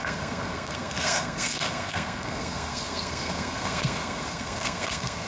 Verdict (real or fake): fake